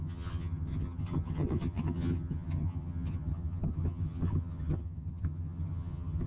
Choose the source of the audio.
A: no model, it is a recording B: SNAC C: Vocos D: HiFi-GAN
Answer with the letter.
D